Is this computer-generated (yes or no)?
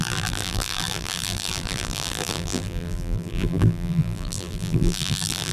yes